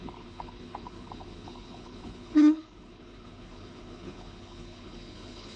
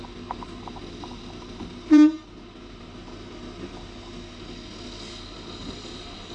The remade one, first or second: first